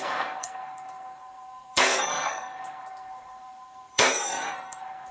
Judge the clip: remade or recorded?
remade